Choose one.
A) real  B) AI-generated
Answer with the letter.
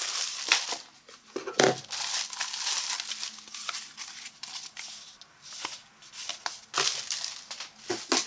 A